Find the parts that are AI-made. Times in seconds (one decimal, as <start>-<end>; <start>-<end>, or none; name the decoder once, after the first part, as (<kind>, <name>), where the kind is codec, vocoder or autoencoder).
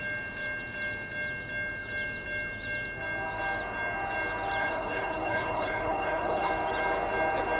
4.6-6.5 (codec, HILCodec)